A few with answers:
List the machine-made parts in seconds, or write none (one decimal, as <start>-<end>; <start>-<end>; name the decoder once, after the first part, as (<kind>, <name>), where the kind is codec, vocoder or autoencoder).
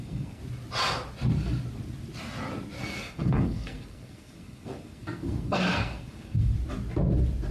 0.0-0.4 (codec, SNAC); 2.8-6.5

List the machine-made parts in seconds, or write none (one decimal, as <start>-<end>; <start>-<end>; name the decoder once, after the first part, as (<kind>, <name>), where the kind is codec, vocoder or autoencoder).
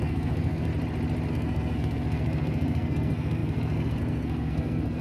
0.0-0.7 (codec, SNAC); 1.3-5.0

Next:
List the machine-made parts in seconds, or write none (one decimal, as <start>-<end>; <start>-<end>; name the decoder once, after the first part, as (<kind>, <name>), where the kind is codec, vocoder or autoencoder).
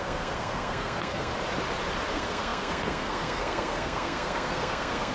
0.0-1.3 (codec, SNAC); 2.1-5.1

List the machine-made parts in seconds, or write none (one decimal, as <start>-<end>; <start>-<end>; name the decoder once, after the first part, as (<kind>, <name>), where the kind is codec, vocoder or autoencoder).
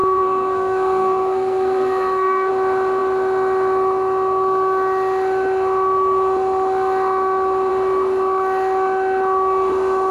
0.0-2.5 (codec, SNAC)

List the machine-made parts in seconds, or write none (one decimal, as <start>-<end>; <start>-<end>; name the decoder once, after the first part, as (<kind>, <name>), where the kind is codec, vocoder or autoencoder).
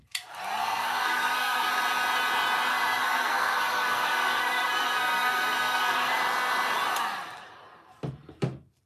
0.6-1.7 (codec, SNAC); 2.7-6.2